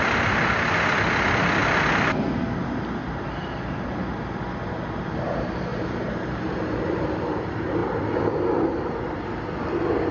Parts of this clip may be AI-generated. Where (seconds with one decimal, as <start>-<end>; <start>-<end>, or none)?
3.0-4.2; 5.7-6.8